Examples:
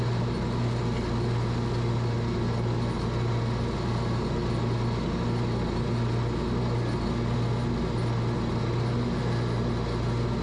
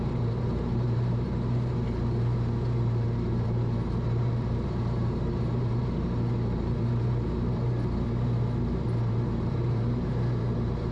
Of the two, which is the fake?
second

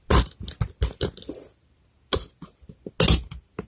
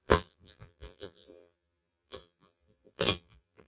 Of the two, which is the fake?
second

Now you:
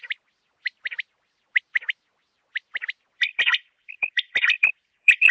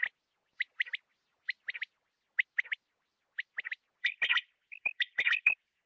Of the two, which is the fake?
first